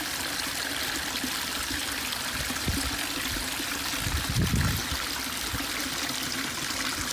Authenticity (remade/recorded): recorded